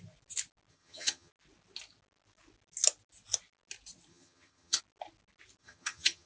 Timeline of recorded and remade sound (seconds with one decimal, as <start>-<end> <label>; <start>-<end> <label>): 0.0-0.7 recorded; 0.7-1.3 remade; 1.3-4.1 recorded; 4.1-4.8 remade; 4.8-5.6 recorded; 5.6-6.3 remade